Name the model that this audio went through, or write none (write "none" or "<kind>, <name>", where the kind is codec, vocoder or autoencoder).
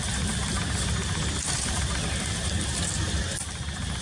none